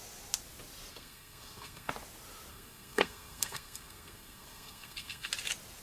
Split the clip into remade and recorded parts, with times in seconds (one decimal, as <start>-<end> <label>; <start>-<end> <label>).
0.0-0.9 recorded; 0.9-1.9 remade; 1.9-2.5 recorded; 2.5-5.3 remade; 5.3-5.8 recorded